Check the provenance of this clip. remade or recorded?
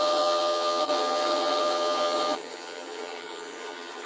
remade